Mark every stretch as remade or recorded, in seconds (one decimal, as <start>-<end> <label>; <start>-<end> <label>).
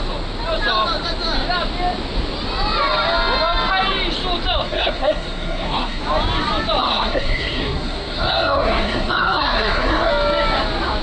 0.0-4.6 recorded; 4.6-6.0 remade; 6.0-6.8 recorded; 6.8-10.1 remade; 10.1-11.0 recorded